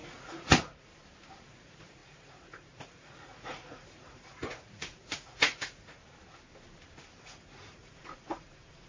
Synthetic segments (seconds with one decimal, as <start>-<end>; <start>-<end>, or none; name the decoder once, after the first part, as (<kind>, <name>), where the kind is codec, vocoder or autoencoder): 0.0-0.9 (vocoder, Vocos); 1.5-6.0; 7.2-8.9